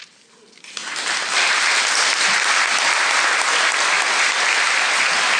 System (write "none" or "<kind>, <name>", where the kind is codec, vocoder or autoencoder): none